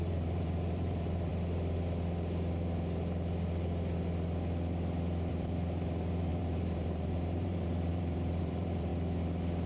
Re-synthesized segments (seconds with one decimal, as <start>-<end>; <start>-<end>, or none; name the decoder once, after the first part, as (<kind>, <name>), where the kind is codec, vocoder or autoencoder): 0.0-1.3 (vocoder, BigVGAN v2); 5.3-8.9